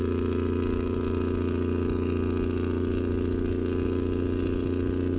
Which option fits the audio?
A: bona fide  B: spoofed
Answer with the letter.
A